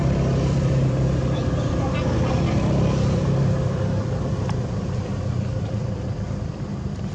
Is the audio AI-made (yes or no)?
yes